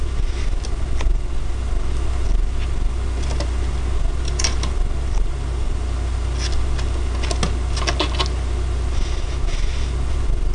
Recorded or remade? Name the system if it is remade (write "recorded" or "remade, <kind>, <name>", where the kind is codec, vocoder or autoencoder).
recorded